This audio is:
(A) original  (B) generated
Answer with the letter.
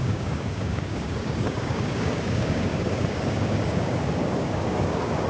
B